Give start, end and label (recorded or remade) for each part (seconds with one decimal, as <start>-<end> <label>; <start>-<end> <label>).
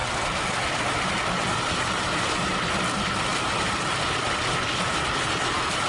0.0-5.9 recorded